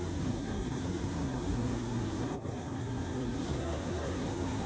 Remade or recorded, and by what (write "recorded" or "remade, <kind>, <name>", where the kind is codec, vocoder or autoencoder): remade, codec, SNAC